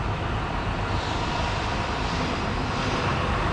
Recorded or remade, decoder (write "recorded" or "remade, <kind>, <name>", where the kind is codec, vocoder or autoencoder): recorded